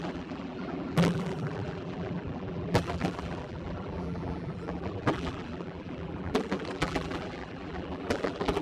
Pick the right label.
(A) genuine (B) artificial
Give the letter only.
B